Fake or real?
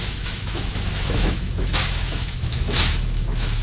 fake